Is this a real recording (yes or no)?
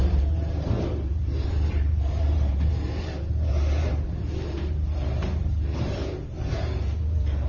no